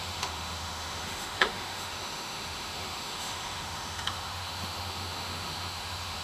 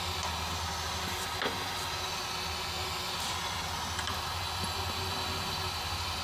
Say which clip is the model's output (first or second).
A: first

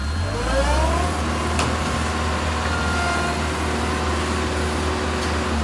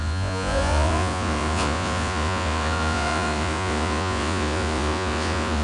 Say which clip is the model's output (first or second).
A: second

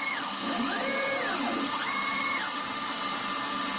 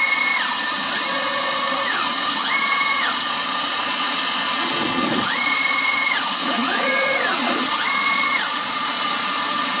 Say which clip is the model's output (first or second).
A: second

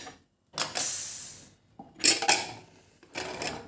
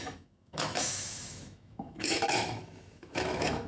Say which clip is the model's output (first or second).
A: second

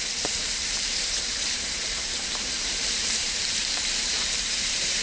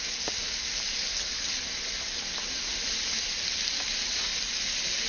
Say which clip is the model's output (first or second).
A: first